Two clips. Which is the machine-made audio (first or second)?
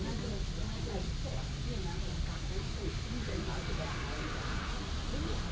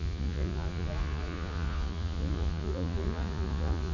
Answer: second